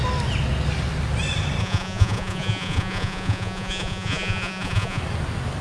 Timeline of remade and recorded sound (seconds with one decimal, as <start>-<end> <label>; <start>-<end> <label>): 0.0-1.6 recorded; 1.6-5.0 remade; 5.0-5.6 recorded